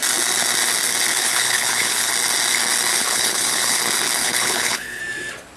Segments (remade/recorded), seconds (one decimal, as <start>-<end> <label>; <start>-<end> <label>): 0.0-1.1 recorded; 1.1-2.1 remade; 2.1-2.9 recorded; 2.9-3.8 remade; 3.8-4.2 recorded; 4.2-5.0 remade; 5.0-5.6 recorded